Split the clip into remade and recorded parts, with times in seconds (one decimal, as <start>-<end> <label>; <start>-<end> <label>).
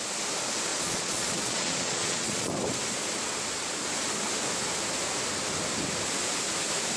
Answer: 0.0-0.7 recorded; 0.7-2.5 remade; 2.5-7.0 recorded